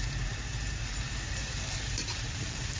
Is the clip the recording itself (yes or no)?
no